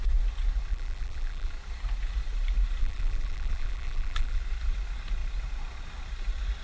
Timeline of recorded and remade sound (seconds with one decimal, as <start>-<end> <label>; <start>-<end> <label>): 0.0-0.7 recorded; 0.7-1.5 remade; 1.5-2.8 recorded; 2.8-4.4 remade; 4.4-6.6 recorded